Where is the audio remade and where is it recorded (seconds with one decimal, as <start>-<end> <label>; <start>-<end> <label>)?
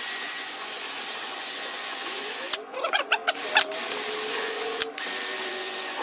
0.0-3.2 remade; 3.2-4.3 recorded; 4.3-4.8 remade; 4.8-5.5 recorded; 5.5-6.0 remade